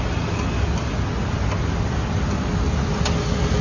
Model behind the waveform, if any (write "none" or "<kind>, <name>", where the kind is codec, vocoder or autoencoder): none